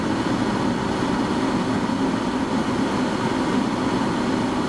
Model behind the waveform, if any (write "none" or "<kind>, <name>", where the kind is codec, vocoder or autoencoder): none